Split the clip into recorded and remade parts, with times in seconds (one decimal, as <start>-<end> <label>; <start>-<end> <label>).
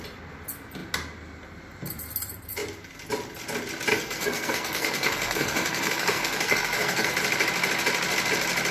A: 0.0-3.9 recorded; 3.9-7.1 remade; 7.1-8.7 recorded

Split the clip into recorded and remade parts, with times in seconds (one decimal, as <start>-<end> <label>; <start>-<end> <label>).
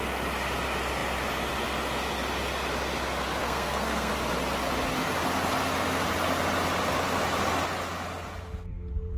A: 0.0-3.4 recorded; 3.4-4.1 remade; 4.1-9.2 recorded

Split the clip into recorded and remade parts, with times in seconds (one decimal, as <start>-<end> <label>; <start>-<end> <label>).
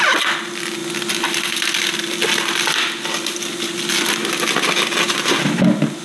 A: 0.0-6.0 recorded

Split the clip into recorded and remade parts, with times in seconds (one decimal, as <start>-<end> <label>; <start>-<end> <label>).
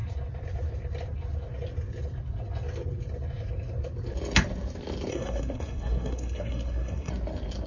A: 0.0-5.1 recorded; 5.1-7.1 remade; 7.1-7.7 recorded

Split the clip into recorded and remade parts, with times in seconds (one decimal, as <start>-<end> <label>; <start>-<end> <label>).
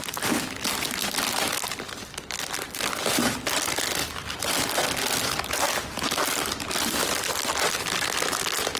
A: 0.0-8.8 recorded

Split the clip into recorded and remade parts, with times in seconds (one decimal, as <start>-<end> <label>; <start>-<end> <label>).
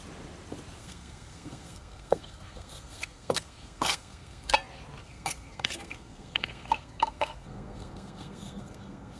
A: 0.0-0.8 recorded; 0.8-4.5 remade; 4.5-5.0 recorded; 5.0-9.2 remade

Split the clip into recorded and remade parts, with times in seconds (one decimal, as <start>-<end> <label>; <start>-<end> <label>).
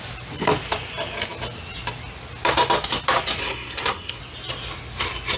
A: 0.0-3.4 recorded; 3.4-4.2 remade; 4.2-5.4 recorded